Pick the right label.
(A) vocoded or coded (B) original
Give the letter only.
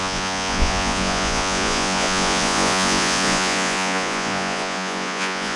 A